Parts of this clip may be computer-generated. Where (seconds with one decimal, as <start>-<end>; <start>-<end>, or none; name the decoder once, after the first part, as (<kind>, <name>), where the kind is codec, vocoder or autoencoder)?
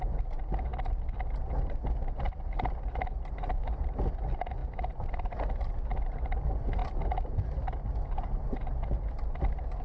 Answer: none